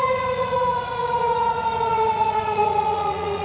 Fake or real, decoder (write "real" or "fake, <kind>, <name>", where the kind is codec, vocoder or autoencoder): fake, vocoder, Vocos